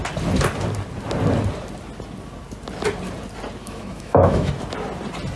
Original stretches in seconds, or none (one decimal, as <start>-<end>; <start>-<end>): 0.0-3.6; 4.5-5.4